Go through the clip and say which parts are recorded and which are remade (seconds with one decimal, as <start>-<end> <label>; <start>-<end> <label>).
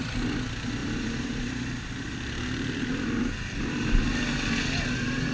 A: 0.0-0.8 recorded; 0.8-4.0 remade; 4.0-5.3 recorded